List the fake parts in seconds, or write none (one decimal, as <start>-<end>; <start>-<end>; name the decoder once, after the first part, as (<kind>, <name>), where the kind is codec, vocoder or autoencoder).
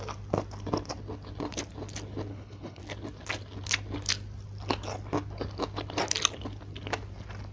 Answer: 2.3-2.8 (codec, HILCodec)